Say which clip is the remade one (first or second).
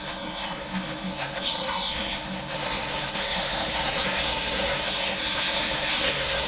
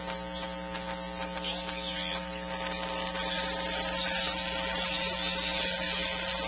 first